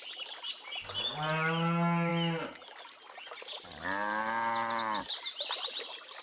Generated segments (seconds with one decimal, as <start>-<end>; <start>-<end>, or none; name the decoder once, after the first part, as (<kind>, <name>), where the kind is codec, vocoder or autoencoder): none